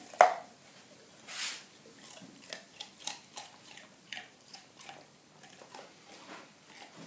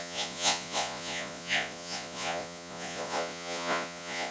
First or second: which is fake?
second